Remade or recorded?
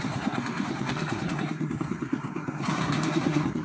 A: remade